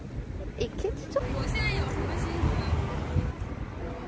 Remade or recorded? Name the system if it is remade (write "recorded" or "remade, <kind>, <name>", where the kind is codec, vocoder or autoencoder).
recorded